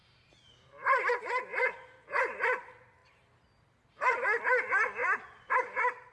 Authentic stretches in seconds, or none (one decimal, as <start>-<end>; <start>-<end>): 0.0-1.5; 2.2-6.1